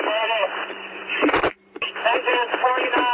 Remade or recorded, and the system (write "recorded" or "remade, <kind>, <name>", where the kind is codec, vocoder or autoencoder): remade, vocoder, BigVGAN v2